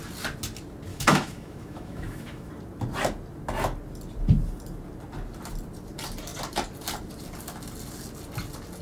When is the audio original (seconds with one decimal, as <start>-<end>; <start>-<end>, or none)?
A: 0.0-0.9; 2.5-8.8